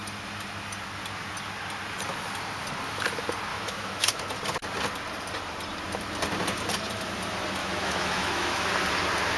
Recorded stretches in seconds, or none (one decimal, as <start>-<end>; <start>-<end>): 0.0-3.5; 4.2-7.6; 8.7-9.4